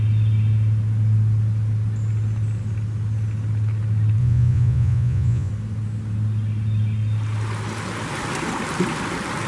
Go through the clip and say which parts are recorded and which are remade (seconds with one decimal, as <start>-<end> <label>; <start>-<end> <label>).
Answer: 0.0-4.2 recorded; 4.2-5.5 remade; 5.5-9.5 recorded